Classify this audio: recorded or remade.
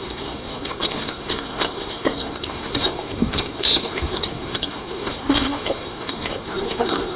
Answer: remade